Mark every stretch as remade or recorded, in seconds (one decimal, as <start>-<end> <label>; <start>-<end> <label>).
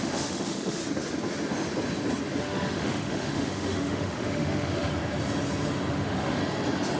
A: 0.0-0.8 remade; 0.8-2.4 recorded; 2.4-4.9 remade; 4.9-5.9 recorded; 5.9-6.4 remade; 6.4-7.0 recorded